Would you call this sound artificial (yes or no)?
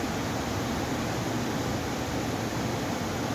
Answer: no